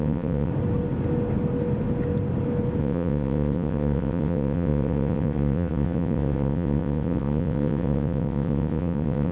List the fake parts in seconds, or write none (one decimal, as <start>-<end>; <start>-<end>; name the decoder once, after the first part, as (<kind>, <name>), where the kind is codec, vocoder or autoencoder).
0.0-0.5 (vocoder, WaveNeXt); 2.8-9.3